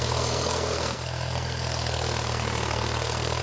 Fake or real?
fake